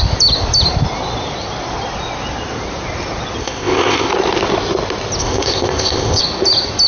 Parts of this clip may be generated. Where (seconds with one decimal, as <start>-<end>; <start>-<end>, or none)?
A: 3.4-4.1; 5.2-6.2